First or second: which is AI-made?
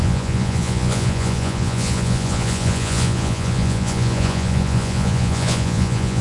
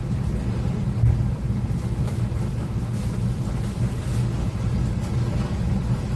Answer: first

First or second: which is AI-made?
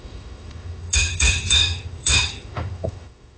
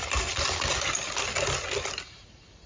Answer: first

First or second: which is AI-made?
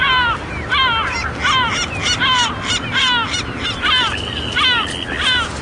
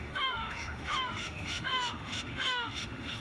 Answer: second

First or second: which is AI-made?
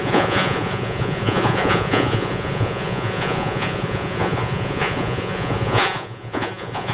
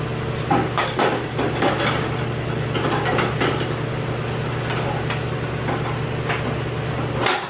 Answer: first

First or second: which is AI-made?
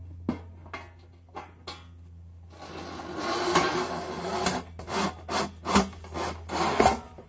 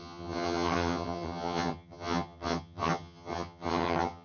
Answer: second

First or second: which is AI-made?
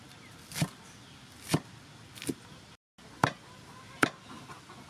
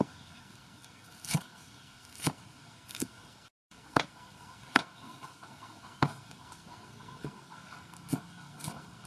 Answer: second